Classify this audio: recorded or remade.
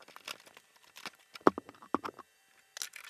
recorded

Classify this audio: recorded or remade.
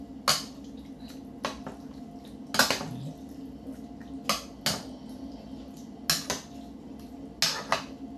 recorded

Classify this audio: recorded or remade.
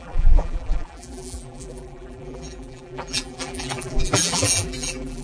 remade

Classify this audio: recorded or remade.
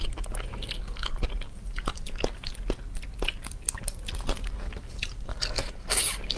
recorded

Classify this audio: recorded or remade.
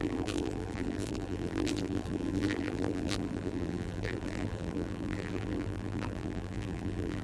remade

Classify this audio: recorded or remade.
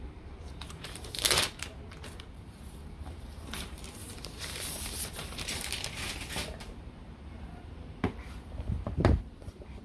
remade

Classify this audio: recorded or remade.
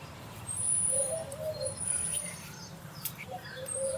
remade